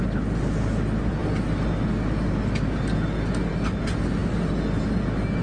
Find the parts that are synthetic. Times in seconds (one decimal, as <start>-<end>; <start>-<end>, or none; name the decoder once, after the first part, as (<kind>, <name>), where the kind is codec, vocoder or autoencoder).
none